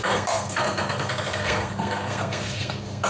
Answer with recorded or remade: remade